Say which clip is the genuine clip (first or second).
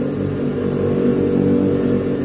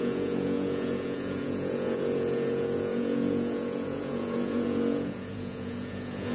first